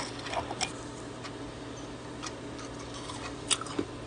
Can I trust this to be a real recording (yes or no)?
yes